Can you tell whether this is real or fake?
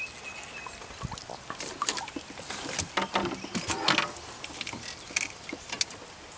real